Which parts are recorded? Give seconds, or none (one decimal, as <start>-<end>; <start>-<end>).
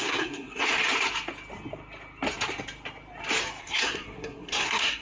0.6-3.6